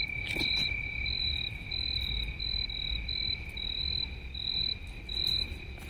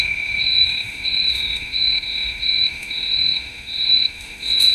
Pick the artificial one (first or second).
second